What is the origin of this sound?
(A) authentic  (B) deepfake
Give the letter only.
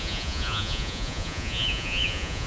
B